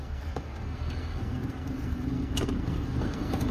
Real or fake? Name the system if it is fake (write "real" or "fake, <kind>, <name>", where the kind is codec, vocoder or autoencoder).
fake, codec, SNAC